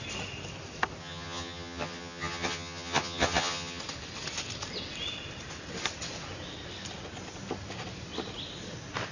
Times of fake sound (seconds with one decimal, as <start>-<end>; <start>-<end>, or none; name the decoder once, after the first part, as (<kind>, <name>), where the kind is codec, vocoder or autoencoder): 1.0-3.8 (vocoder, HiFi-GAN)

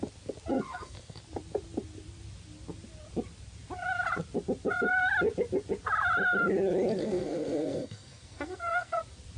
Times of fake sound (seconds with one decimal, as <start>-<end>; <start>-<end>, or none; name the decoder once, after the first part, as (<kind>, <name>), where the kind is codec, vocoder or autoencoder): 0.7-1.2 (codec, SNAC); 7.0-9.0